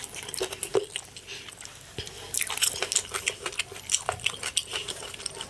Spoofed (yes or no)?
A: no